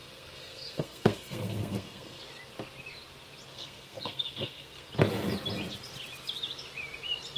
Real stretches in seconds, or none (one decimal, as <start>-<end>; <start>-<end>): 2.2-3.5; 4.9-7.4